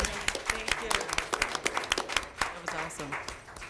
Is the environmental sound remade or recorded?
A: recorded